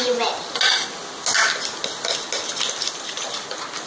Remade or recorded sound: recorded